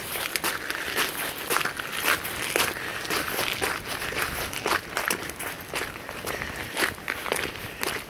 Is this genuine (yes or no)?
yes